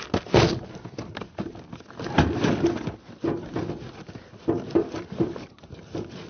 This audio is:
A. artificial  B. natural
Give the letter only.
B